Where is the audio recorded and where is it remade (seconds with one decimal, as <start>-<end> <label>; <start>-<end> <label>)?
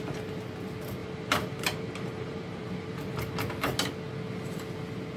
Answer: 0.0-1.0 recorded; 1.0-3.3 remade; 3.3-5.2 recorded